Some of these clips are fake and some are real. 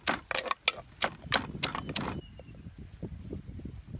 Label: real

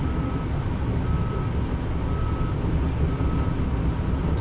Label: real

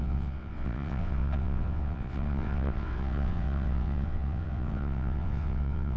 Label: fake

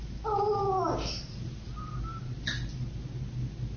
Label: real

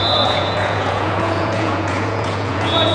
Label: fake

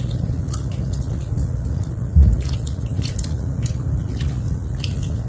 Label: fake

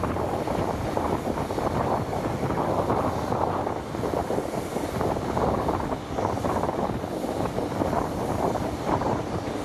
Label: real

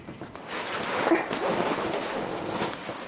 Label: real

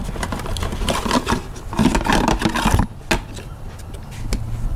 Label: real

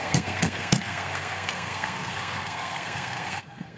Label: fake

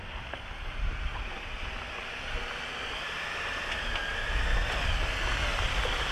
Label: real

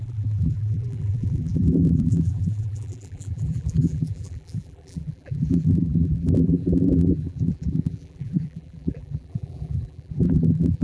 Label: fake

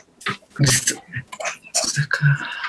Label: real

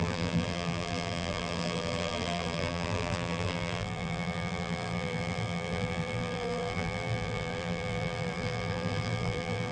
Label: fake